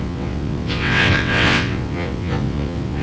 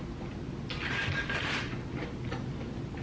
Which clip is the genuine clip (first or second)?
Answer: second